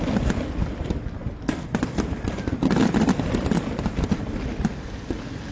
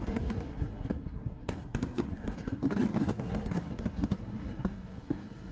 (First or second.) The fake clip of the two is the second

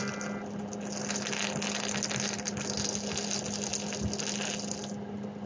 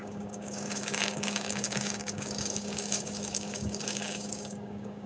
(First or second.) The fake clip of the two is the second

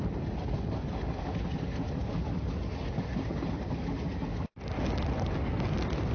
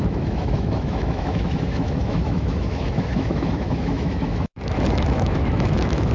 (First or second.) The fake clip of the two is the second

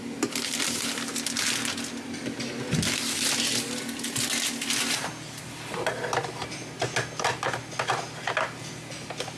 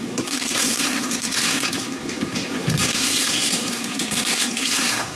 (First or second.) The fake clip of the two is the second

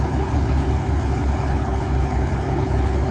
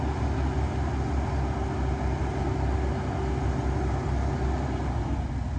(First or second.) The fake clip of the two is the first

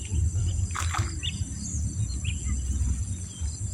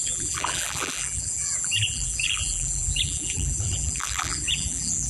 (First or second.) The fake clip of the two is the second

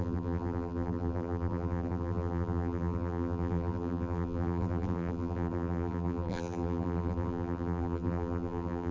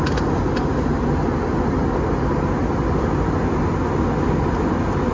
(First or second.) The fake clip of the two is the first